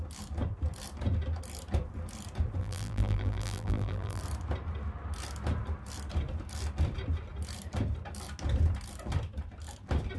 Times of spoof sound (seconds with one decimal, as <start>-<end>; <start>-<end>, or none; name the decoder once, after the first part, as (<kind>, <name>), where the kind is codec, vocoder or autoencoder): 2.6-4.2 (vocoder, BigVGAN v2)